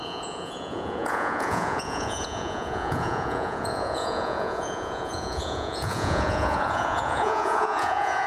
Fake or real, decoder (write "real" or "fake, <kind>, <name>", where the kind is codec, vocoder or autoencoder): fake, vocoder, Vocos